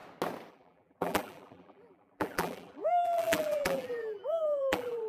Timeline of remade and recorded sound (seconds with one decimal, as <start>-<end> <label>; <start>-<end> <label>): 0.0-0.5 recorded; 0.5-5.1 remade